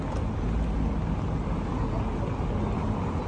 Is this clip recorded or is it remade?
recorded